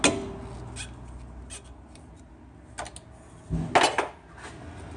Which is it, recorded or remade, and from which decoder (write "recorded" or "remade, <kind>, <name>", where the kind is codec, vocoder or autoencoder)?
recorded